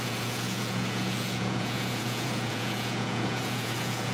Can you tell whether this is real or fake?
fake